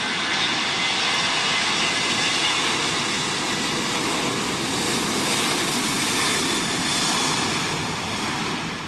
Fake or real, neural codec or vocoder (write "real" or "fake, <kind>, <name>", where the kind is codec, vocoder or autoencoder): real